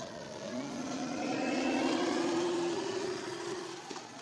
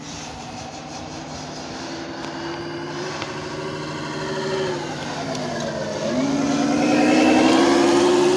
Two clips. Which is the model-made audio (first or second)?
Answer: first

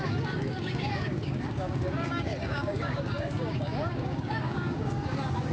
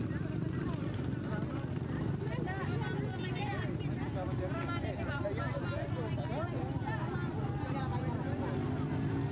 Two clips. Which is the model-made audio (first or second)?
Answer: first